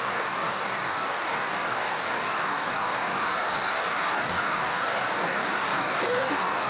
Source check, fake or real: fake